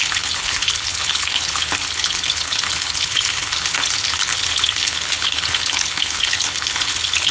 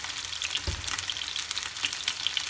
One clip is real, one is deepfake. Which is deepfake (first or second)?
first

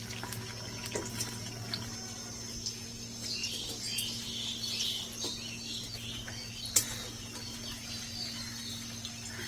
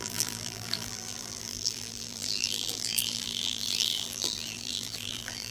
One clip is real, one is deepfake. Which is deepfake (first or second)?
second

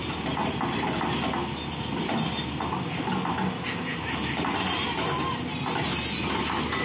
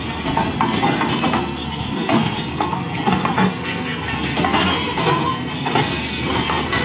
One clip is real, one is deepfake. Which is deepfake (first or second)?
second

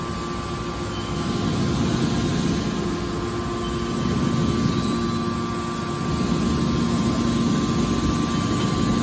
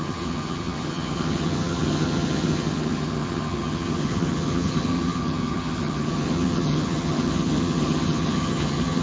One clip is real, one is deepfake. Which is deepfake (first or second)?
second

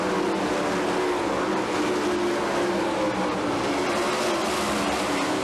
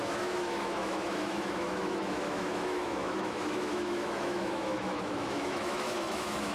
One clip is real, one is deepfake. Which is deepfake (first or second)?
second